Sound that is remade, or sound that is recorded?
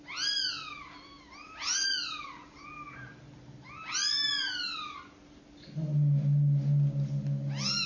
recorded